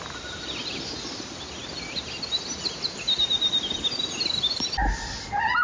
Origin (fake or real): real